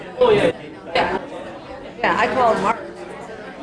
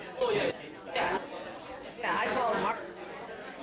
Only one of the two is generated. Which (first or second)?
second